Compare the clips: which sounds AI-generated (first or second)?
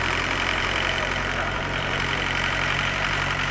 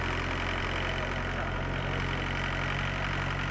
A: first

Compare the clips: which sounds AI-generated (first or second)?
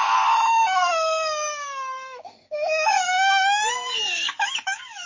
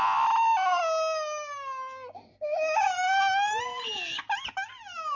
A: first